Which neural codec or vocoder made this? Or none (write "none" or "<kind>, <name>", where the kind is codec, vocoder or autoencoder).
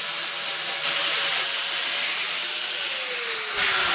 none